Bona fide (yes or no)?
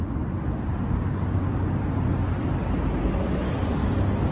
yes